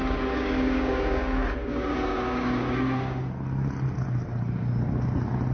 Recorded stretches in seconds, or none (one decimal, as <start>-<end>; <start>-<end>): 3.3-5.5